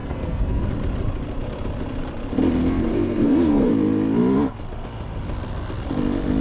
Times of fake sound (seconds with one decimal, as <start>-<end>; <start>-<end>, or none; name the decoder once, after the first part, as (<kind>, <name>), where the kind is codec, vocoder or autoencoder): 0.0-0.7 (codec, SNAC); 2.6-3.7